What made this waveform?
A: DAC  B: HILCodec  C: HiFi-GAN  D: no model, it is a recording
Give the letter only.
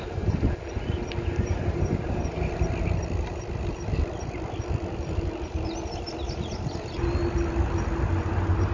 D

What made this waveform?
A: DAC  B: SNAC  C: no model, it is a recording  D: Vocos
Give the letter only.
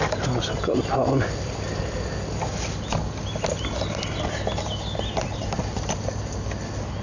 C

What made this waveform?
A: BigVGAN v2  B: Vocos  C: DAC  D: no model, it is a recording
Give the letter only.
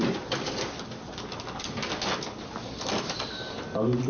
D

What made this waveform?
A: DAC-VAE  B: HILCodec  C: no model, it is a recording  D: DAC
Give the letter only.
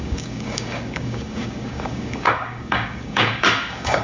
D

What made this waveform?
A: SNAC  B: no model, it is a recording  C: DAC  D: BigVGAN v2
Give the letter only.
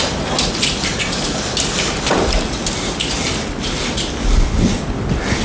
B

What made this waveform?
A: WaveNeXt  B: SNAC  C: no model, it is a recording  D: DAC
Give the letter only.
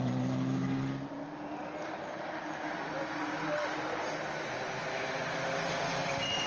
C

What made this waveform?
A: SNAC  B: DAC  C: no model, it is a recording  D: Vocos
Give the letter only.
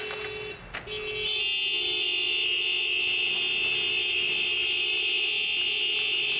C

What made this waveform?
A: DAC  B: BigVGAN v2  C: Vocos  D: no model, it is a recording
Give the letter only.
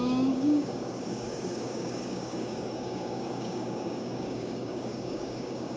A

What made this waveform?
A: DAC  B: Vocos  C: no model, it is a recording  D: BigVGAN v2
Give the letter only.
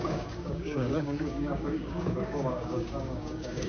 A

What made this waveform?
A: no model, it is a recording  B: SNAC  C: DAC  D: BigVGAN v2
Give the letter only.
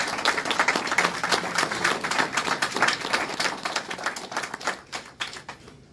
A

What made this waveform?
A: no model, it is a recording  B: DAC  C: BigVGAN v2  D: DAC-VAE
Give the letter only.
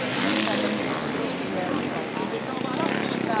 A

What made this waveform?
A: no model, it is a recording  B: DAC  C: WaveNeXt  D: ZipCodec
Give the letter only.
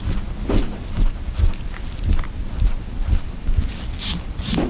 A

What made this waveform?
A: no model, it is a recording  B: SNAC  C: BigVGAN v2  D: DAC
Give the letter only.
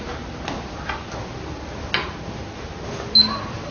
A